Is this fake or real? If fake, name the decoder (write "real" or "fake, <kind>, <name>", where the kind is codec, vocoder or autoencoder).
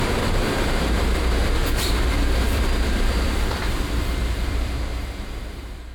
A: fake, vocoder, BigVGAN v2